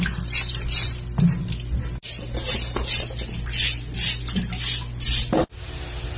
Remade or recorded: recorded